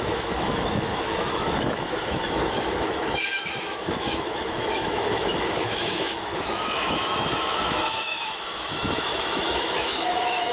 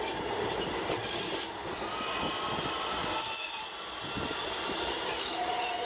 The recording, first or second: second